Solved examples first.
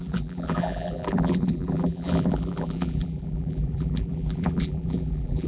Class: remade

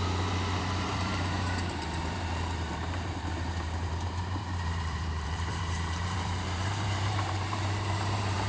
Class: remade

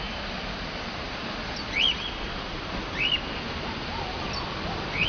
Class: recorded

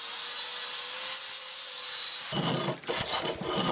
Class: recorded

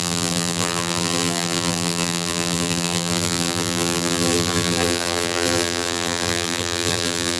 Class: remade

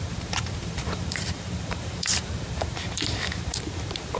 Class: remade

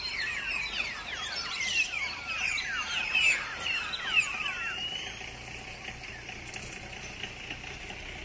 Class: remade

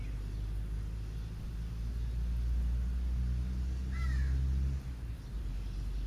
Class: recorded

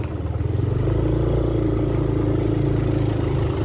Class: recorded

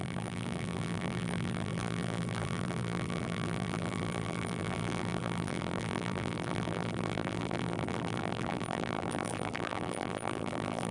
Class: remade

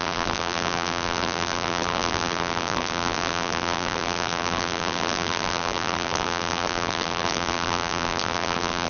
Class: remade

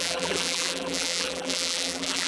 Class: remade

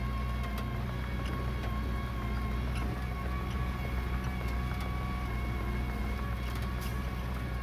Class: recorded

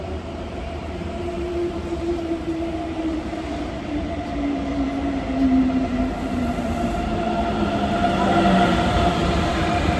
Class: remade